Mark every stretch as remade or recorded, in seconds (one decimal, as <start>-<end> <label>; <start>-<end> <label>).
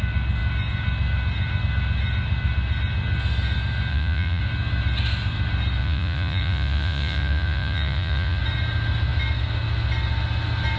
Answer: 0.0-3.9 recorded; 3.9-4.4 remade; 4.4-5.8 recorded; 5.8-8.4 remade; 8.4-10.8 recorded